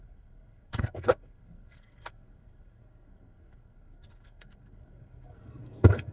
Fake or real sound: fake